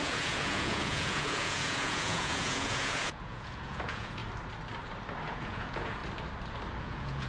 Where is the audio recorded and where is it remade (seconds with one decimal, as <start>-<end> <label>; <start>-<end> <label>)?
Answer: 0.0-4.2 remade; 4.2-5.3 recorded; 5.3-6.0 remade; 6.0-6.8 recorded; 6.8-7.3 remade